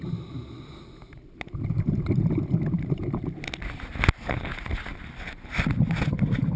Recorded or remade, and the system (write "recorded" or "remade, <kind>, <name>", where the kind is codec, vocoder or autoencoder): recorded